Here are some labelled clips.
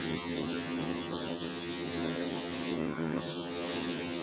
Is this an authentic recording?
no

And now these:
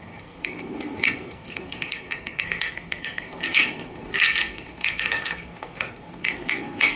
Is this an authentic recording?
no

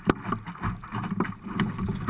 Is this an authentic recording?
yes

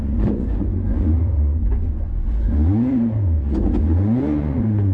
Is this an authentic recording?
no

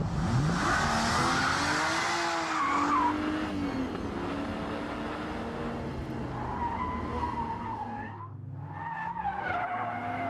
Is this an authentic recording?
yes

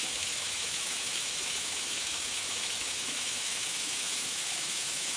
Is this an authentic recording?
no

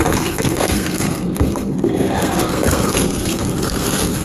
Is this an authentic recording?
no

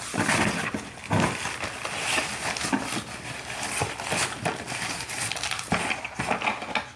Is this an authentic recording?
yes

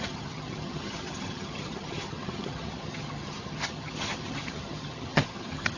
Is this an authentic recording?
no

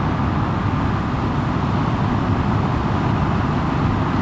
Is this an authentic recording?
yes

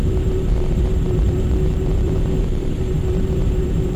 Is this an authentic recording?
no